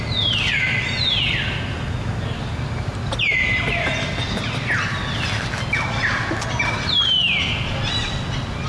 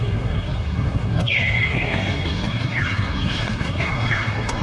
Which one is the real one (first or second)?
first